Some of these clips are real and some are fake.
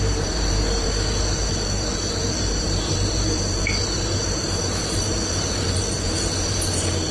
fake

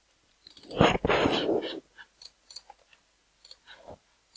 real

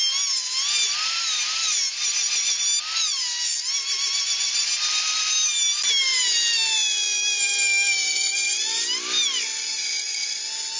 real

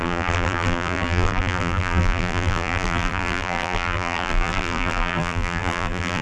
fake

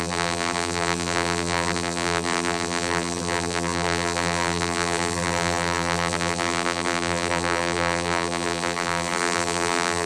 fake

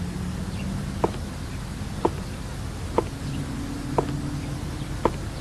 real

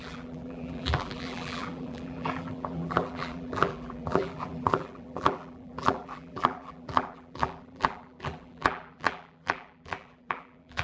fake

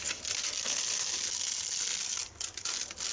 real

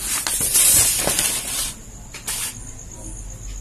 real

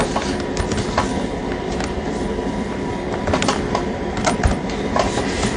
fake